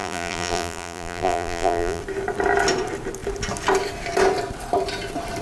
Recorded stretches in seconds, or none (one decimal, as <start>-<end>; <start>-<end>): 2.0-5.4